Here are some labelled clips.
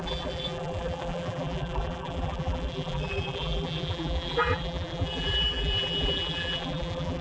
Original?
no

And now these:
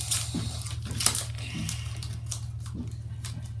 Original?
yes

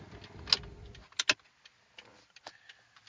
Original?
yes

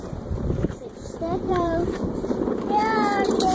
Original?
no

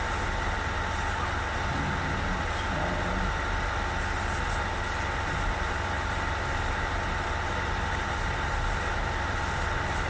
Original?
yes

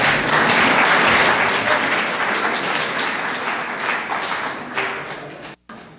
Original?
yes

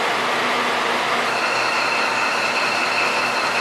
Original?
yes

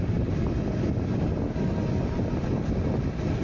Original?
yes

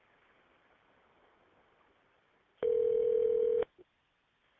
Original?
yes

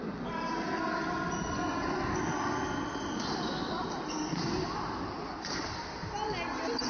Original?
yes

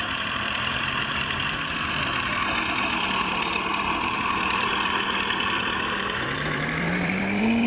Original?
no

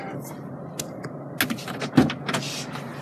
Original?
yes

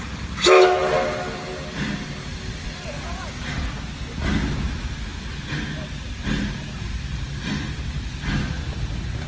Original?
yes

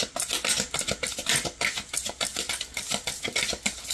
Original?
yes